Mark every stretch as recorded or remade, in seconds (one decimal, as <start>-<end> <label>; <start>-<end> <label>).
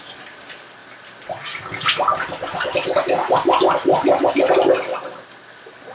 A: 0.0-5.9 recorded